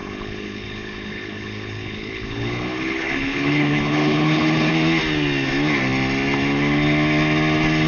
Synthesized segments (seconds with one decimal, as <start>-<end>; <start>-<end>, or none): 0.0-4.7